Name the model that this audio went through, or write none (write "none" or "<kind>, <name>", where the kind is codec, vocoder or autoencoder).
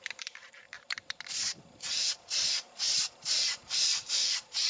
vocoder, BigVGAN v2